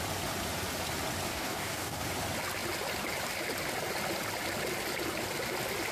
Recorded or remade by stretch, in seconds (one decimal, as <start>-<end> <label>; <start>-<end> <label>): 0.0-1.3 recorded; 1.3-2.0 remade; 2.0-5.9 recorded